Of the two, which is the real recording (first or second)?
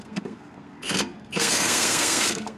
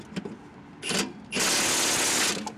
second